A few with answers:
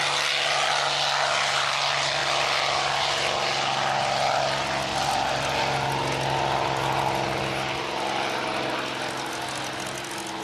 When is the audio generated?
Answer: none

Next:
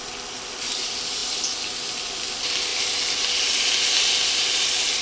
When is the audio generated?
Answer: none

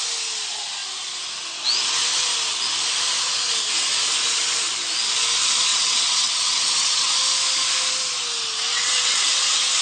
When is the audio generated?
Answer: 5.7-7.1 (vocoder, WaveNeXt); 8.7-9.3